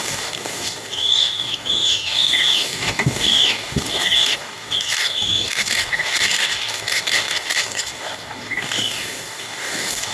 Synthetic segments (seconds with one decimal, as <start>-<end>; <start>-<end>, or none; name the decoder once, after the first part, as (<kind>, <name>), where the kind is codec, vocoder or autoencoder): 0.0-10.1 (codec, DAC)